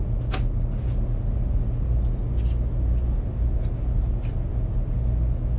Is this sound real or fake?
real